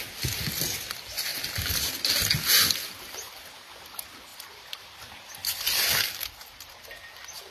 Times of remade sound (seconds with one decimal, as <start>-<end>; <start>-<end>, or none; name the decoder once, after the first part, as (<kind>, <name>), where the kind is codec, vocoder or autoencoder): 1.3-1.9 (vocoder, BigVGAN v2); 4.3-5.0; 5.4-6.7